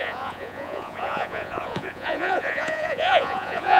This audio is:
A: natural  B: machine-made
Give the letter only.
B